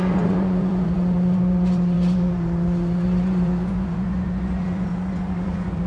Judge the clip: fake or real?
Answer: fake